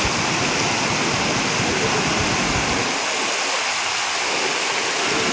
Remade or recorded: recorded